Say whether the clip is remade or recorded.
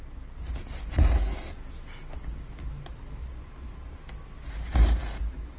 recorded